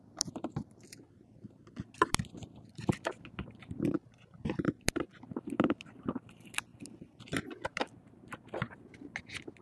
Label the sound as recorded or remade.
remade